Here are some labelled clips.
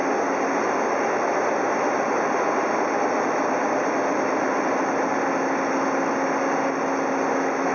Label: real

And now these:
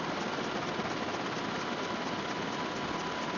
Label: real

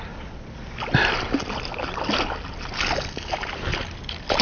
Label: real